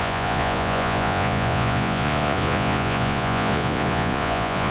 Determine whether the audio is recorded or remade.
remade